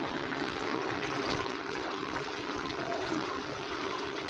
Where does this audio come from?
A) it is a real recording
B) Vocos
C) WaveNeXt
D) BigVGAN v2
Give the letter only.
C